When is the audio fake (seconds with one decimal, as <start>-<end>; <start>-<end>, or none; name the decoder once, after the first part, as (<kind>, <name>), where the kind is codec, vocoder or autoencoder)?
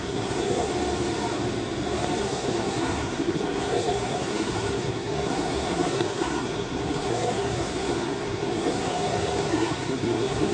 0.0-0.7 (codec, SNAC); 2.2-10.5